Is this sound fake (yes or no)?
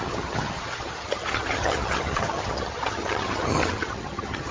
yes